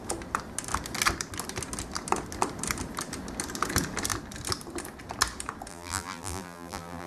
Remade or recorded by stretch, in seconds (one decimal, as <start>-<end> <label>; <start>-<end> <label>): 0.0-5.7 recorded; 5.7-7.1 remade